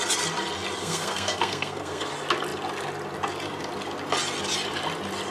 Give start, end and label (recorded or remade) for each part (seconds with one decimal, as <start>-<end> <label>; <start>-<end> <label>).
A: 0.0-0.8 recorded; 0.8-2.1 remade; 2.1-5.3 recorded